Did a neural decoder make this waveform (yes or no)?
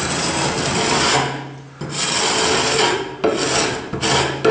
no